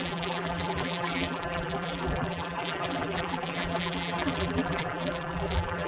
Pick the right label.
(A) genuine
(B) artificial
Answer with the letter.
B